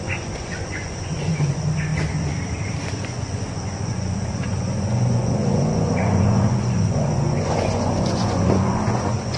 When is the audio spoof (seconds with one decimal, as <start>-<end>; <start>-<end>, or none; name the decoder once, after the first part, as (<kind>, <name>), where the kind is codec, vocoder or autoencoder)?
0.0-1.9 (vocoder, Vocos); 2.9-9.4